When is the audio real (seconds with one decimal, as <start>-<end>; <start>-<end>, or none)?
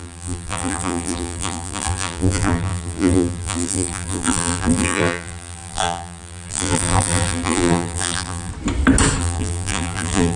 8.5-9.2